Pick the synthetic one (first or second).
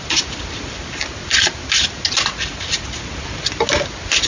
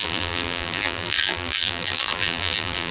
second